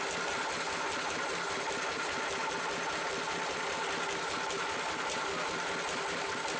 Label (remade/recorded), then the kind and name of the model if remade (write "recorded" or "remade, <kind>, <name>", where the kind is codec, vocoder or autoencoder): recorded